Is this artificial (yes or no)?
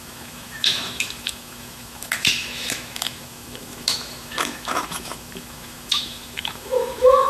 yes